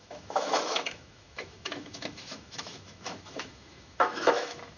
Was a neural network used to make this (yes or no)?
yes